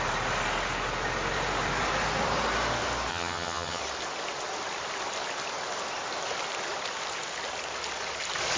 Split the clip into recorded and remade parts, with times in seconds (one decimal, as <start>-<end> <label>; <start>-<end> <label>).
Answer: 0.0-3.1 recorded; 3.1-3.8 remade; 3.8-8.6 recorded

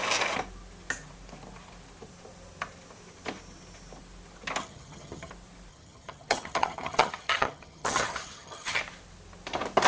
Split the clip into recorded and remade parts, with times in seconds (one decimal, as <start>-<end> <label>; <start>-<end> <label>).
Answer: 0.0-4.6 recorded; 4.6-5.3 remade; 5.3-5.7 recorded; 5.7-8.8 remade; 8.8-9.9 recorded